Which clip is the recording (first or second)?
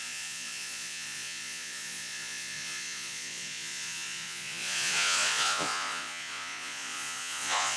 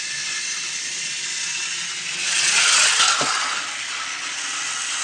second